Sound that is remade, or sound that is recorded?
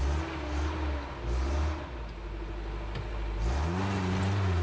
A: recorded